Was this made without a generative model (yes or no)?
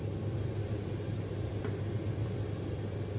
yes